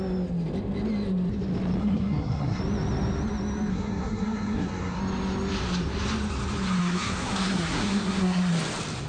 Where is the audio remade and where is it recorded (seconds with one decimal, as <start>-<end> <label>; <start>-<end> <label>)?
0.0-1.8 recorded; 1.8-2.6 remade; 2.6-3.7 recorded; 3.7-5.0 remade; 5.0-6.8 recorded; 6.8-8.5 remade; 8.5-9.1 recorded